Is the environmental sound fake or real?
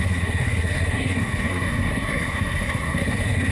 fake